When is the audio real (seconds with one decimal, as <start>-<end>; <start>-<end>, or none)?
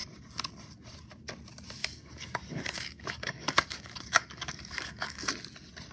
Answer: 0.0-1.8; 5.3-5.9